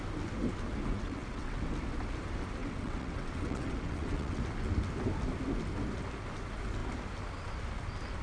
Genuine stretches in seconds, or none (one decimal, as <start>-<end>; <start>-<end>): 0.0-0.9; 1.6-2.6; 4.4-8.2